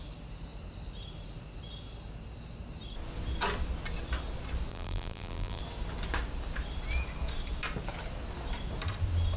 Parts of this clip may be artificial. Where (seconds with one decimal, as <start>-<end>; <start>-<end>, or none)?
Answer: 4.7-5.6